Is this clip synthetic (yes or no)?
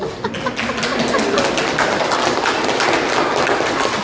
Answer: no